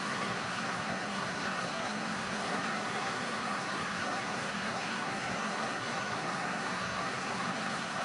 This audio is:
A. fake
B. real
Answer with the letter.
A